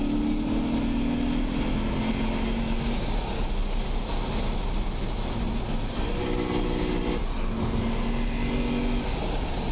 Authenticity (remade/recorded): recorded